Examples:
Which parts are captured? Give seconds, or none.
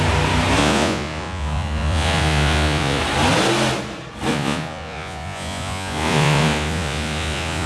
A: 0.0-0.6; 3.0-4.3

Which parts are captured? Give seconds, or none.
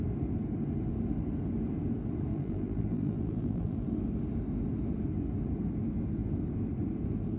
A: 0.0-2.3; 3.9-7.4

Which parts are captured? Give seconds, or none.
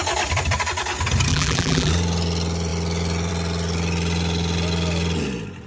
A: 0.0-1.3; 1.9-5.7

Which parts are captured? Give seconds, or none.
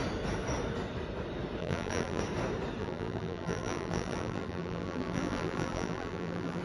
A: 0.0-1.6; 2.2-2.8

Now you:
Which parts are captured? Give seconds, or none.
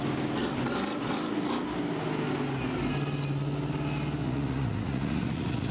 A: 0.0-4.2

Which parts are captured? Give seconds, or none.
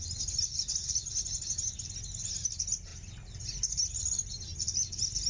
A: 0.0-5.3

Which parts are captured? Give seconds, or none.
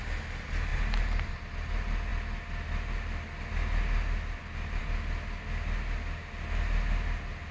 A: 0.0-0.7; 1.3-7.5